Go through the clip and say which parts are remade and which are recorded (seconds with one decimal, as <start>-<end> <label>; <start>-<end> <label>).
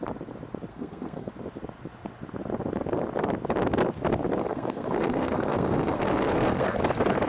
0.0-0.7 recorded; 0.7-1.3 remade; 1.3-4.4 recorded; 4.4-6.8 remade; 6.8-7.3 recorded